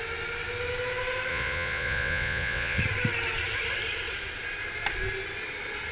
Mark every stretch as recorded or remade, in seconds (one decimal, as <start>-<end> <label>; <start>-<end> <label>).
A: 0.0-1.3 recorded; 1.3-2.8 remade; 2.8-5.9 recorded